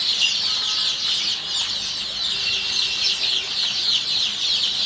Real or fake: real